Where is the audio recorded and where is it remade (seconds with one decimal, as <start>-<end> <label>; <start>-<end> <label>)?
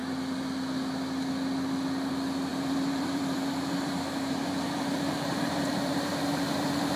0.0-2.5 recorded; 2.5-7.0 remade